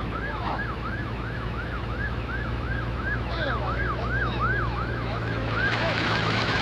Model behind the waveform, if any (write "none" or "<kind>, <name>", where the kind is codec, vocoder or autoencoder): autoencoder, DAC-VAE